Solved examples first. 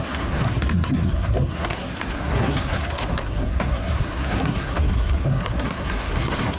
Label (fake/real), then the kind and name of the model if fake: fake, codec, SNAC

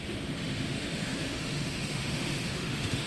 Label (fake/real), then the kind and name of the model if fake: fake, autoencoder, DAC-VAE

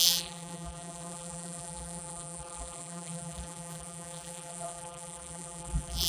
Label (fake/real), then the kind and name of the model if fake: fake, vocoder, BigVGAN v2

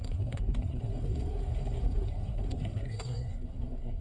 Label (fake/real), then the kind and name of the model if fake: fake, codec, SNAC